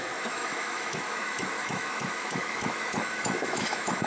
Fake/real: fake